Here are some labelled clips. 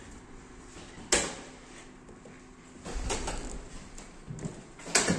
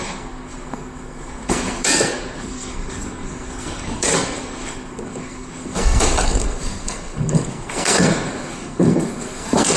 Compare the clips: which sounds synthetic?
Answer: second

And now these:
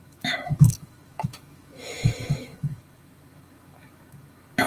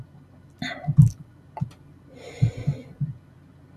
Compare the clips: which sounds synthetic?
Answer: first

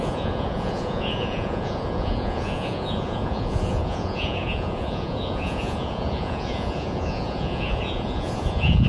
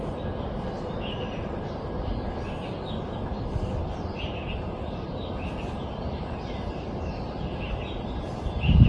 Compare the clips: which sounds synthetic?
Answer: first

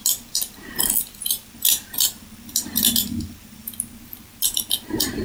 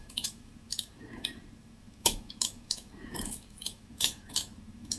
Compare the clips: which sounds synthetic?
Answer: second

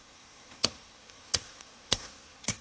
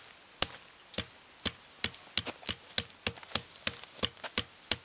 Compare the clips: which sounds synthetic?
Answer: first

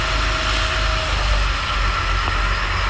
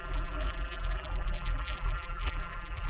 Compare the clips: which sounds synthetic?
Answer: second